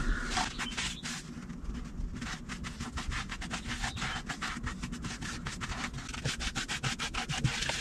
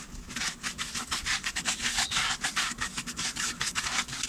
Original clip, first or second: first